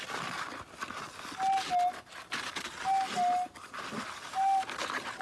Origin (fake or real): real